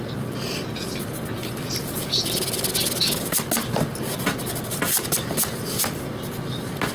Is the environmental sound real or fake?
real